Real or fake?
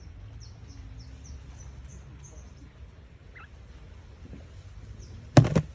real